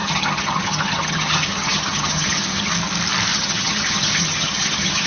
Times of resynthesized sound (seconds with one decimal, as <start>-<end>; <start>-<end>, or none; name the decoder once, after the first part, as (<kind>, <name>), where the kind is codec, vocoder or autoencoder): 0.0-2.7 (vocoder, HiFi-GAN); 3.3-5.1